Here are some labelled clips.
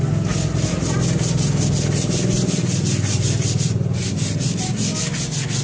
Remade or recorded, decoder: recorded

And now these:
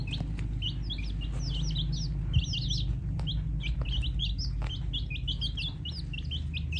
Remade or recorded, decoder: recorded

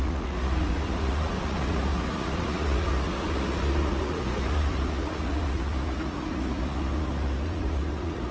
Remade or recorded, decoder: remade, vocoder, Vocos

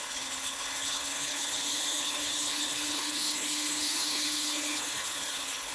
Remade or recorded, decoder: remade, codec, HILCodec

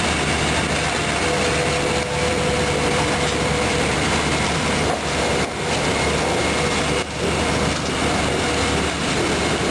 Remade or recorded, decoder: remade, vocoder, BigVGAN v2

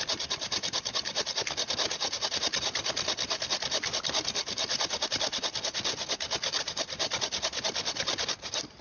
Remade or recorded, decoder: recorded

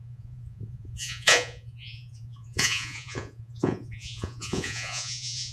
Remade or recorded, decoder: remade, vocoder, Vocos